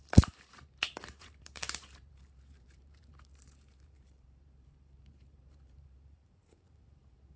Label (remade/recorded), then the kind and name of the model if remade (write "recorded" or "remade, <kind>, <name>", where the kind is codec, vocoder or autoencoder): remade, vocoder, BigVGAN v2